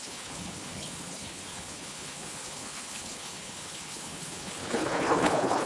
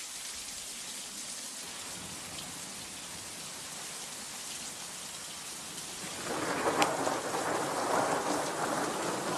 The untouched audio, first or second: second